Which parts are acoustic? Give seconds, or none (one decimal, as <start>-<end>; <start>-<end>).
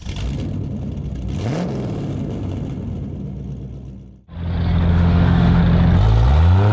0.0-4.9; 5.6-6.7